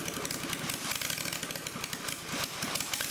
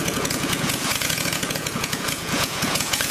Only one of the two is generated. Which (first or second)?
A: second